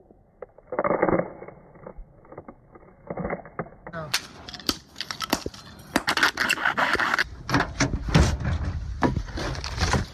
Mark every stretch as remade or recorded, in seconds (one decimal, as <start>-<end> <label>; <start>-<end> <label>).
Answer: 0.0-10.1 recorded